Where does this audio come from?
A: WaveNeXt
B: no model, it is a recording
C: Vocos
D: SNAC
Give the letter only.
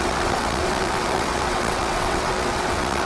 A